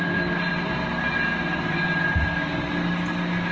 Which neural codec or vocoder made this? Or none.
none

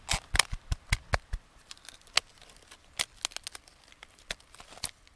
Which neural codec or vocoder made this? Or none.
none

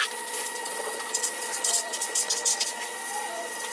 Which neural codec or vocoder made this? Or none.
vocoder, Vocos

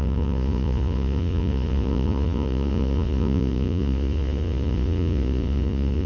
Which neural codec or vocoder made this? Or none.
vocoder, Vocos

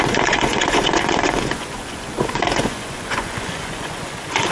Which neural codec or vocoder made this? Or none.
vocoder, Vocos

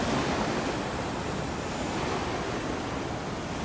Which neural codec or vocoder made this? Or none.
none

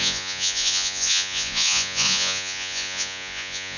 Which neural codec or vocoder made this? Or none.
vocoder, Vocos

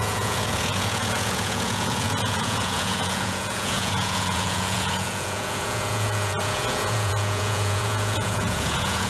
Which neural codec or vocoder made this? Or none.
vocoder, Vocos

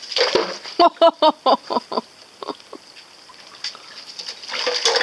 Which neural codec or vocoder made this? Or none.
none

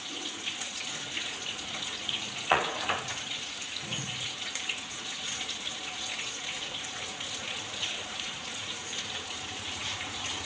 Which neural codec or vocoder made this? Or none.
vocoder, Vocos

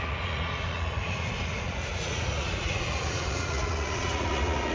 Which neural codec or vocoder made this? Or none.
vocoder, Vocos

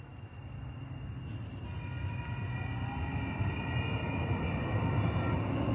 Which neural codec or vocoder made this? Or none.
none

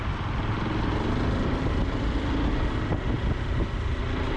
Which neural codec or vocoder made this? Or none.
none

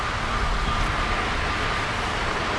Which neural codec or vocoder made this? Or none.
none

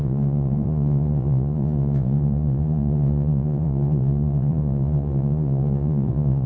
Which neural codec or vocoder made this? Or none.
vocoder, Vocos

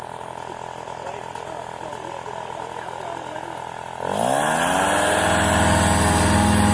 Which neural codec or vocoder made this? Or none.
none